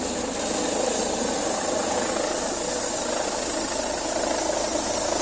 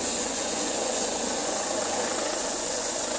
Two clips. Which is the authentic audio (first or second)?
first